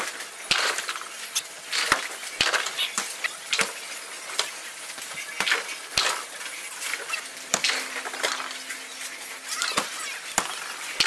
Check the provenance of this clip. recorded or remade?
recorded